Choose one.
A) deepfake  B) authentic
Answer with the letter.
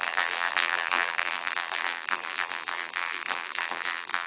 A